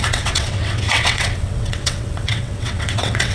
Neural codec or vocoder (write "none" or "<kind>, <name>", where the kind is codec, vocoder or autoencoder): vocoder, WaveNeXt